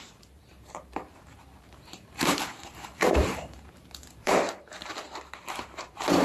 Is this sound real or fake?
fake